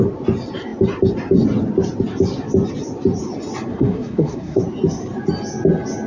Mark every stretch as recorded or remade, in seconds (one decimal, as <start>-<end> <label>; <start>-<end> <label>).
0.0-3.7 recorded; 3.7-4.6 remade; 4.6-6.1 recorded